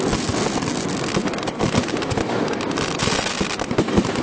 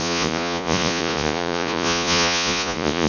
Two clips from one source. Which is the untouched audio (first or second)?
first